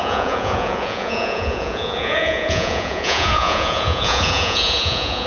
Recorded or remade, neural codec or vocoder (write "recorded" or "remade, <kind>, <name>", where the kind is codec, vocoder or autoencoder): remade, vocoder, Vocos